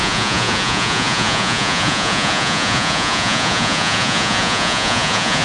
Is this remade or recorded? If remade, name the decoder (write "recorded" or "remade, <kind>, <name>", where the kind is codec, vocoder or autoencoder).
remade, vocoder, Vocos